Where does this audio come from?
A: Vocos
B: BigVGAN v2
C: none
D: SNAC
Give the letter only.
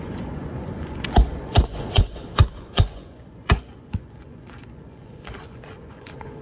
A